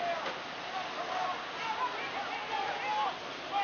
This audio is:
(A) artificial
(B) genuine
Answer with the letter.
B